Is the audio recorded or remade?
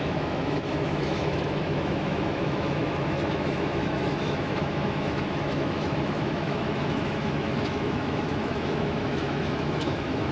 remade